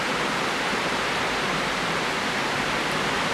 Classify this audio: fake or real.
real